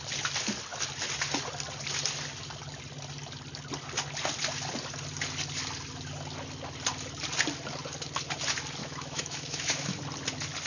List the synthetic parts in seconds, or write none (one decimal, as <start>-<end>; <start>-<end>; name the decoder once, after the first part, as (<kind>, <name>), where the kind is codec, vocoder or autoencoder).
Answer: 8.8-10.0 (autoencoder, DAC-VAE)

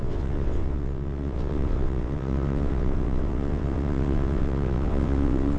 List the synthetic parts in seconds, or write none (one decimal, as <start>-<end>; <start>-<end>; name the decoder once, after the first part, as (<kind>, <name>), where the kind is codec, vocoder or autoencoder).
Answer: 0.0-5.6 (vocoder, WaveNeXt)